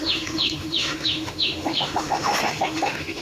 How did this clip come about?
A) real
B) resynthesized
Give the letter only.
B